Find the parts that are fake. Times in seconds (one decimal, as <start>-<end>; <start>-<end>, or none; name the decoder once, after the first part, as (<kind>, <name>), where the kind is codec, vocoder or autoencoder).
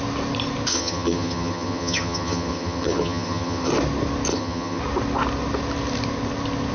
0.7-3.7 (vocoder, HiFi-GAN); 4.3-4.8